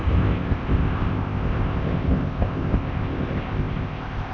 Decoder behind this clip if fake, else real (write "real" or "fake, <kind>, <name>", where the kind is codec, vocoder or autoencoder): fake, codec, ZipCodec